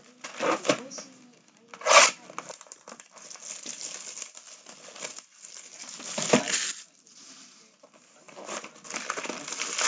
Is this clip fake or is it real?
real